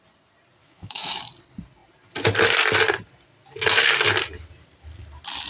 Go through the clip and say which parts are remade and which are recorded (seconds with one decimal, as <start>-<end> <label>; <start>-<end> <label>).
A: 0.0-0.6 recorded; 0.6-1.2 remade; 1.2-5.5 recorded